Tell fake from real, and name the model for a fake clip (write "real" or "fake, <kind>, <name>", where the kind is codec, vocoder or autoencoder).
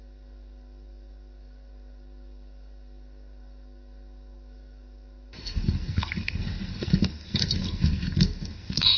fake, codec, SNAC